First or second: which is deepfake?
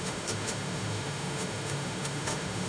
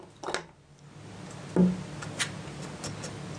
first